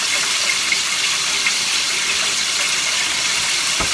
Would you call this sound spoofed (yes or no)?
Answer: yes